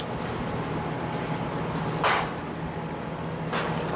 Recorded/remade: recorded